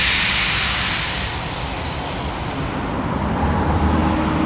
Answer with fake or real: real